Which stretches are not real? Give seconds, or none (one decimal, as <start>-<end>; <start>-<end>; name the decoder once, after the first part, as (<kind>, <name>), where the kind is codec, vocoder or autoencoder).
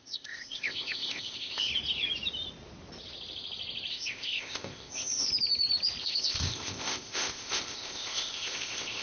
0.0-1.7 (codec, ZipCodec); 3.9-5.3; 6.0-9.0